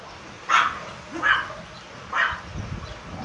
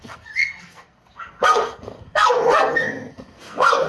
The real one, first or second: first